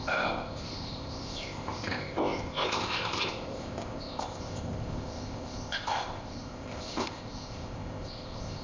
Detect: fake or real fake